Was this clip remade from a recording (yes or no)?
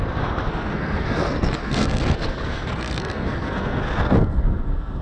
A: yes